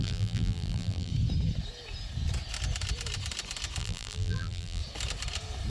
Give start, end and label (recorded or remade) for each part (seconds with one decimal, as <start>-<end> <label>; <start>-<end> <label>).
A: 0.0-1.1 remade; 1.1-3.8 recorded; 3.8-4.8 remade; 4.8-5.7 recorded